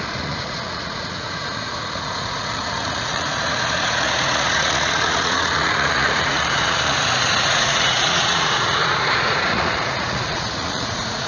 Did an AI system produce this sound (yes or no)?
yes